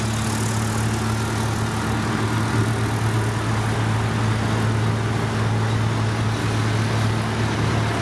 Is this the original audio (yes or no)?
yes